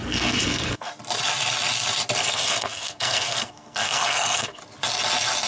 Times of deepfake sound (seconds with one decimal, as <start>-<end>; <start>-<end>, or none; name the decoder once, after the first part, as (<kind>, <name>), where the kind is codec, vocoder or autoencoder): 0.0-0.9 (codec, SNAC); 2.2-4.6

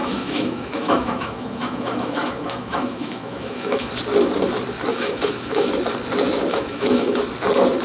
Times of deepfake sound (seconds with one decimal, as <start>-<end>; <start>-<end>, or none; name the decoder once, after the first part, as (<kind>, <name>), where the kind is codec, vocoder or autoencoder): 0.0-3.9 (autoencoder, DAC-VAE); 4.9-5.7; 6.5-7.2